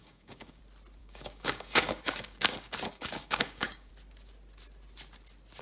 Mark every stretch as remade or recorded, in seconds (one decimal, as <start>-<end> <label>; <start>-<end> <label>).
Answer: 0.0-0.6 remade; 0.6-1.0 recorded; 1.0-3.9 remade; 3.9-5.6 recorded